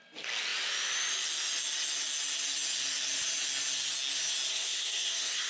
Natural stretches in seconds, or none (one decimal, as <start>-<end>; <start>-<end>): 0.0-4.5